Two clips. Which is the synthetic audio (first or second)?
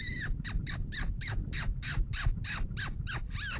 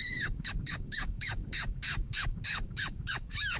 second